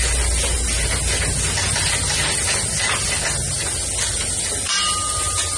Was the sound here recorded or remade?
recorded